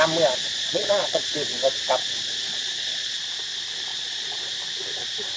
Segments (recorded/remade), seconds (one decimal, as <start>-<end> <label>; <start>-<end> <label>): 0.0-0.4 recorded; 0.4-1.2 remade; 1.2-2.5 recorded; 2.5-3.1 remade; 3.1-3.9 recorded; 3.9-4.5 remade; 4.5-5.4 recorded